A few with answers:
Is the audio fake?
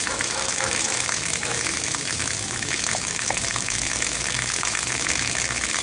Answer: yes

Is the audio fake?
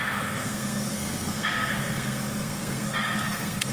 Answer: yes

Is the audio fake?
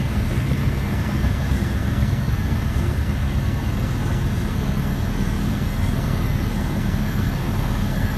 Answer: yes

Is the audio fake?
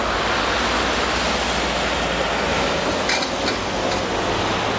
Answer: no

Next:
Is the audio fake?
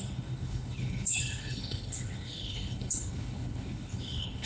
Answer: yes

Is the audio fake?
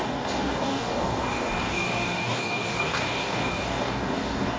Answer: yes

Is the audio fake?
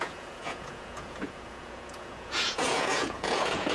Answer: yes